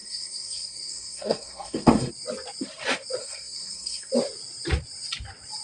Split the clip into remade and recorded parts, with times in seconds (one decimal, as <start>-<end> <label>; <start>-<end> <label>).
0.0-2.1 remade; 2.1-3.2 recorded; 3.2-4.1 remade; 4.1-5.6 recorded